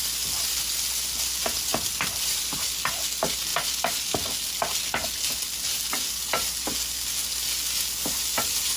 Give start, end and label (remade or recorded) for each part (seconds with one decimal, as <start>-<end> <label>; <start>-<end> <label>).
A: 0.0-8.8 recorded